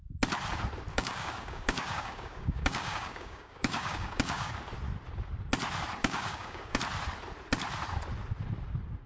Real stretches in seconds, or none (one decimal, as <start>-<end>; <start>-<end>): 0.0-0.9; 4.5-6.0; 6.8-9.1